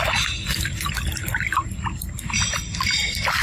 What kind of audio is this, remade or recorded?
recorded